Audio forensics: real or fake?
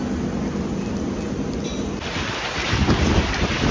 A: real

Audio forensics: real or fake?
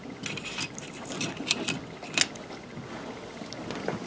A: real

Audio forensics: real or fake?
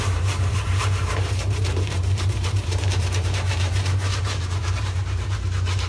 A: fake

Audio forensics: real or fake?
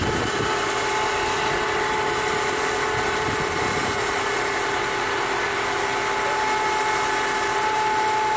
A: real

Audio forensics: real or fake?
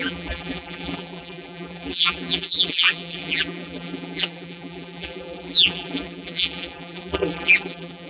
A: fake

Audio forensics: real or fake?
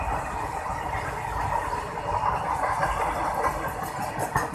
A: real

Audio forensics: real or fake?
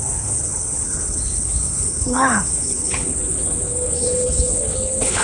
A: fake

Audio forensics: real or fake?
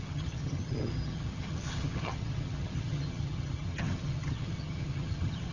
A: fake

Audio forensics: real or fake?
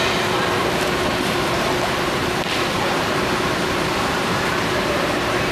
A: fake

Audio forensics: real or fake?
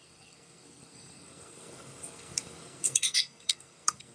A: fake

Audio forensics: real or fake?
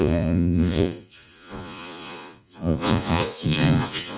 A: fake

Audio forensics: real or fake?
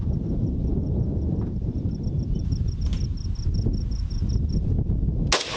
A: real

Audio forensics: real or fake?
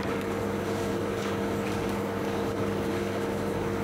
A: fake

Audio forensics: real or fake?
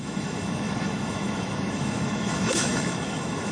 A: fake